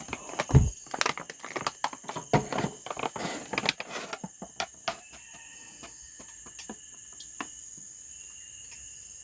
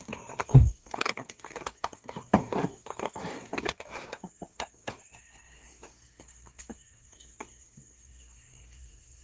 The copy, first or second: second